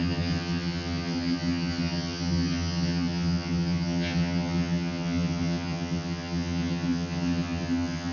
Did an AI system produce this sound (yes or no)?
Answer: yes